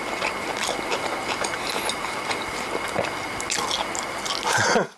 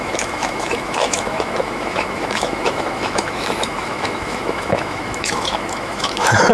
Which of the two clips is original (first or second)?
first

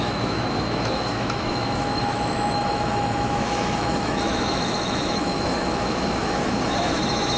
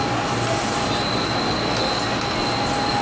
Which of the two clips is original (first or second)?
second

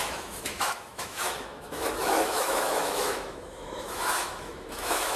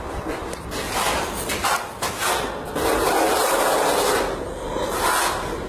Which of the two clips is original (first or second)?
second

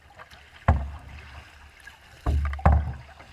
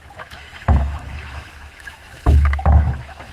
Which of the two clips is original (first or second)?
first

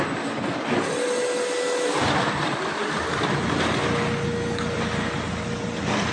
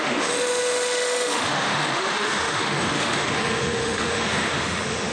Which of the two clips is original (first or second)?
first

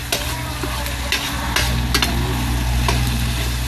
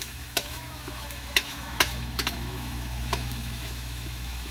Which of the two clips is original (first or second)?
first